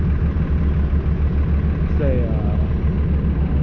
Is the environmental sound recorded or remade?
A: recorded